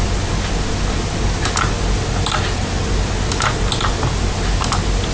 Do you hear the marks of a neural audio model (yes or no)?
no